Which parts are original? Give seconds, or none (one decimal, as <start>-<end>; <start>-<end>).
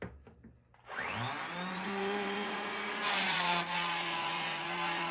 0.0-1.7